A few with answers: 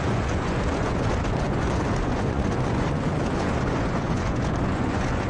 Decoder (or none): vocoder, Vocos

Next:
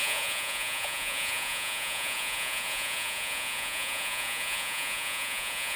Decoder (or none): vocoder, Vocos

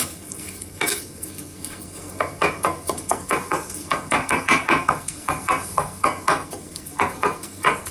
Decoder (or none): codec, SNAC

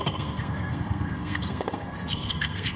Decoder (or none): codec, SNAC